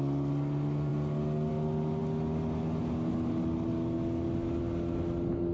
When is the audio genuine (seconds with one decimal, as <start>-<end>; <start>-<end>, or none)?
0.0-5.5